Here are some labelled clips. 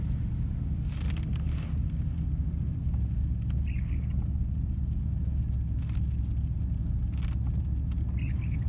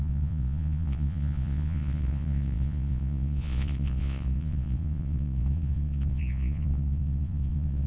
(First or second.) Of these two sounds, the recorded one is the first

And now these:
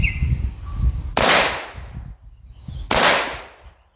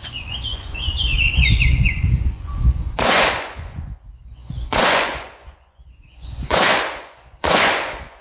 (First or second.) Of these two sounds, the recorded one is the first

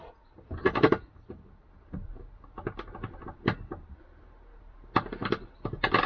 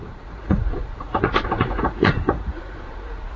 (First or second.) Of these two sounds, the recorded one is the first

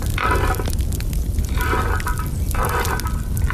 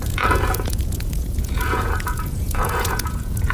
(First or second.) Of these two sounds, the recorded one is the first